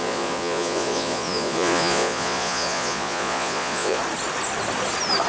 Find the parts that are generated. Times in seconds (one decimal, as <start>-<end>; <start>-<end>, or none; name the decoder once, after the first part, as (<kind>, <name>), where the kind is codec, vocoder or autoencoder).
0.0-4.0 (vocoder, Vocos)